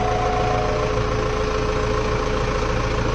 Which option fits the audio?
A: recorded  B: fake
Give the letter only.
A